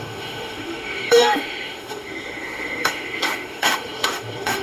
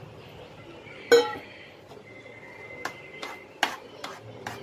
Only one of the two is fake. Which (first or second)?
first